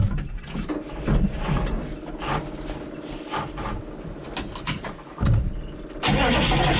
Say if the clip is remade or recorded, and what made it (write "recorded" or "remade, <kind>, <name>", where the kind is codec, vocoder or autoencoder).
recorded